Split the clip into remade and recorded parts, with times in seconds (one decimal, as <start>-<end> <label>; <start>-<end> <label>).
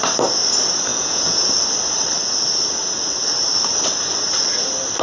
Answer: 0.0-0.9 recorded; 0.9-1.5 remade; 1.5-5.0 recorded